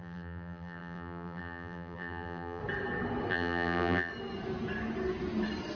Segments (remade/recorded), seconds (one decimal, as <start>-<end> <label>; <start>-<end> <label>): 0.0-2.6 remade; 2.6-3.3 recorded; 3.3-4.1 remade; 4.1-5.8 recorded